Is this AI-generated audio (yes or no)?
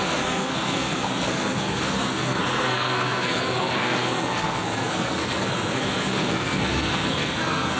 yes